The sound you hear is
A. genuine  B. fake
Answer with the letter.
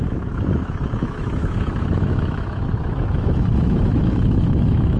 B